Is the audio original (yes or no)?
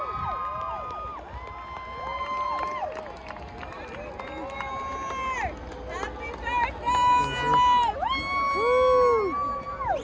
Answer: yes